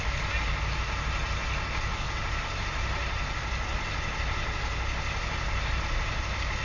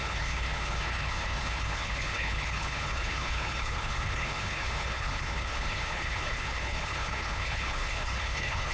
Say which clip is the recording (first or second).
first